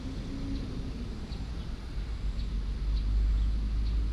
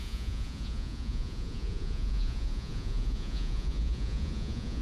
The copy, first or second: second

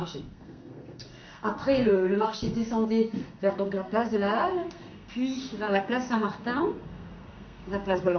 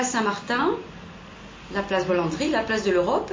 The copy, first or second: first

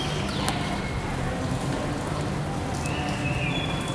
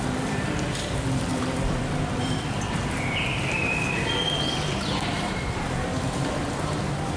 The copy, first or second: second